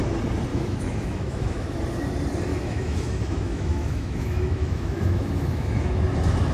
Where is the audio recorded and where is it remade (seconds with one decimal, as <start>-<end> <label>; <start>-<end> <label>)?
0.0-0.5 recorded; 0.5-1.8 remade; 1.8-2.5 recorded; 2.5-6.0 remade; 6.0-6.5 recorded